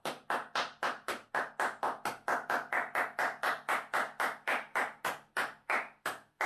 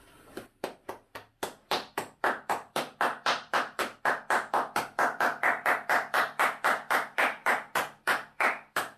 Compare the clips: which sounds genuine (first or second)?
first